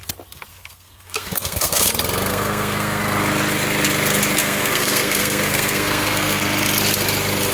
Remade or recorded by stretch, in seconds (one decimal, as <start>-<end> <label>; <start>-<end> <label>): 0.0-0.5 recorded; 0.5-1.9 remade; 1.9-2.3 recorded; 2.3-3.0 remade; 3.0-4.4 recorded; 4.4-6.4 remade; 6.4-7.5 recorded